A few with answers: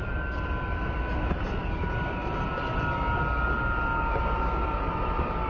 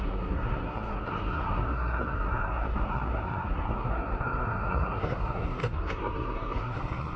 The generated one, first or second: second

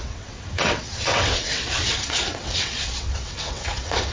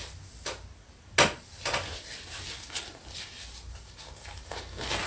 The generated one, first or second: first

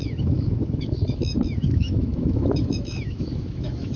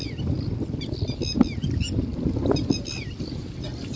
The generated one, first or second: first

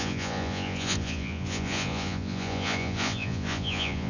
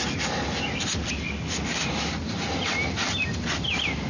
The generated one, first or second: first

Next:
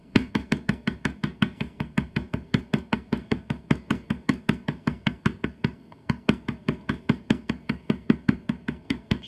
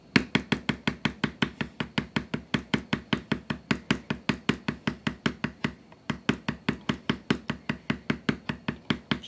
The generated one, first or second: first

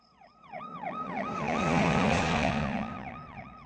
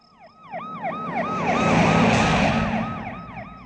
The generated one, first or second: first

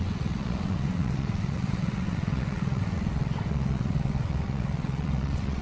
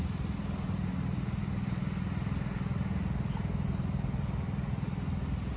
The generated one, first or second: first